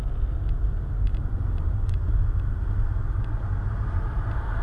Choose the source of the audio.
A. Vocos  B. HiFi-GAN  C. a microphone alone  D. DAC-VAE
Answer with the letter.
C